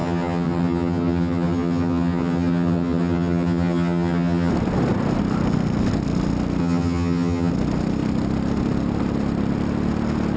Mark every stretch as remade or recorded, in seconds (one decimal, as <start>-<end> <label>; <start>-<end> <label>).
0.0-4.5 remade; 4.5-6.6 recorded; 6.6-7.5 remade; 7.5-10.4 recorded